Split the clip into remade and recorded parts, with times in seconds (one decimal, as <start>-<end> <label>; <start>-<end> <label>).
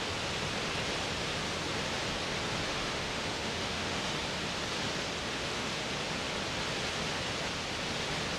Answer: 0.0-2.7 recorded; 2.7-4.1 remade; 4.1-5.2 recorded; 5.2-5.9 remade; 5.9-8.4 recorded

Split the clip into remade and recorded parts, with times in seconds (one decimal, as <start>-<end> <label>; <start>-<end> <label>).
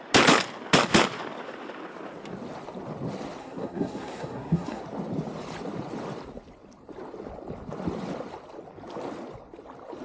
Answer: 0.0-3.4 recorded; 3.4-4.8 remade; 4.8-10.0 recorded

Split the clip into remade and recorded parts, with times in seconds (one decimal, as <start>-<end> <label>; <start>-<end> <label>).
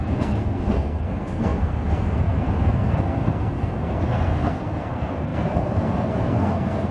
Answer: 0.0-6.9 remade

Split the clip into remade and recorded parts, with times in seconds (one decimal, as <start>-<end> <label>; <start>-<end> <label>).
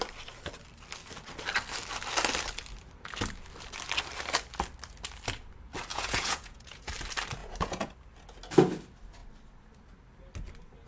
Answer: 0.0-5.9 recorded; 5.9-6.9 remade; 6.9-7.4 recorded; 7.4-7.9 remade; 7.9-10.9 recorded